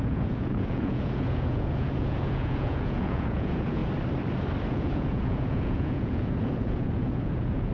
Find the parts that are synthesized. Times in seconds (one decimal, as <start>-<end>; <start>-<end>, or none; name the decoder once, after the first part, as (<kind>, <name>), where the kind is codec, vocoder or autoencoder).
0.0-3.8 (vocoder, Vocos); 4.7-7.7